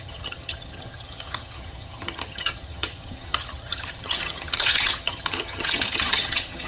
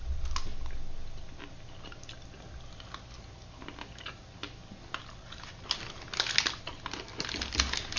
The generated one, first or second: first